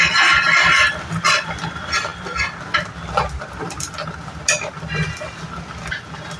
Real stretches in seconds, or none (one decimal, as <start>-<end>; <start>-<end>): 0.0-6.4